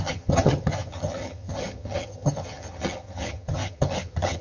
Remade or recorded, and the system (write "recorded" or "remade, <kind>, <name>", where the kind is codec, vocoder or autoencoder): remade, vocoder, HiFi-GAN